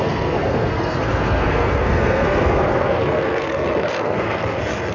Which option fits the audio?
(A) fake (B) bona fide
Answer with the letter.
A